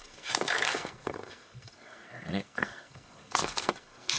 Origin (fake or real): fake